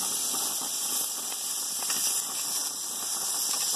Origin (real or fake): real